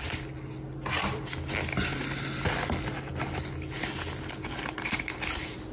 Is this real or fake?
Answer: real